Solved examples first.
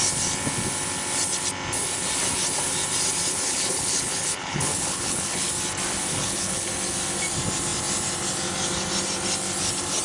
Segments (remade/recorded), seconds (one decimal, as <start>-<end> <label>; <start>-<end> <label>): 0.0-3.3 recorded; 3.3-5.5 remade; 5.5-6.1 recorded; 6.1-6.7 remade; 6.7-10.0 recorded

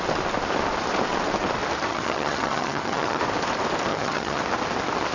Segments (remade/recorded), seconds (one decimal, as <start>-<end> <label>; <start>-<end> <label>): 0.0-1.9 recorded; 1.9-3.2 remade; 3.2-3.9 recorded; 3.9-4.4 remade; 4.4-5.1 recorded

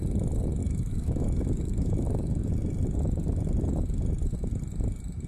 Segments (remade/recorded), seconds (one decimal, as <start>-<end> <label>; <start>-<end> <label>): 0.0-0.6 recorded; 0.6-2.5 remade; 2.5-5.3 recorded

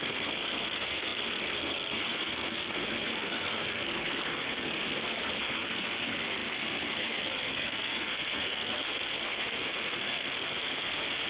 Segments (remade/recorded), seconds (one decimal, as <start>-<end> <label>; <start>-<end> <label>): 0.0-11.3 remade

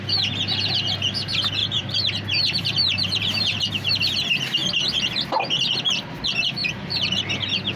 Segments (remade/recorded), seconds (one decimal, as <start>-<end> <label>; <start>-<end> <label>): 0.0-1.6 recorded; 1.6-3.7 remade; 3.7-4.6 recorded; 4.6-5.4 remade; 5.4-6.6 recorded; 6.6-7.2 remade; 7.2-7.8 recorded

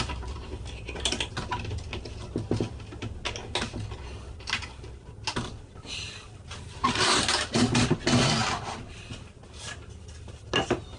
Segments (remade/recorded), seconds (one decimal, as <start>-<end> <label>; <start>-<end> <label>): 0.0-11.0 recorded

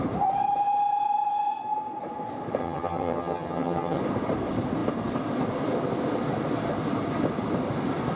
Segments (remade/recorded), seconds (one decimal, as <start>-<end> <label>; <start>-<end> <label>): 0.0-2.6 recorded; 2.6-4.0 remade; 4.0-8.2 recorded

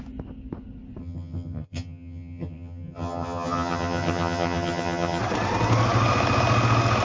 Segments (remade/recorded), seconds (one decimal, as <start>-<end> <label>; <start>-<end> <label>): 0.0-1.0 recorded; 1.0-5.2 remade; 5.2-7.0 recorded